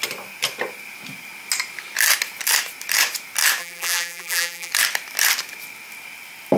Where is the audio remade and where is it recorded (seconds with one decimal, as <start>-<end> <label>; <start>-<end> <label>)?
0.0-3.6 recorded; 3.6-4.7 remade; 4.7-6.6 recorded